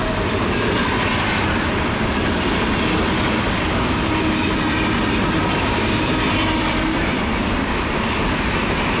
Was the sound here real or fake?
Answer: fake